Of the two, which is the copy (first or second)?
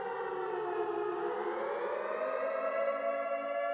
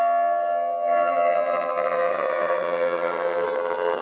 second